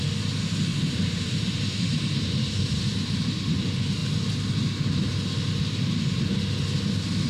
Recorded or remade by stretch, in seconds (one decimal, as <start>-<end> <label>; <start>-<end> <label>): 0.0-0.7 recorded; 0.7-3.3 remade; 3.3-7.3 recorded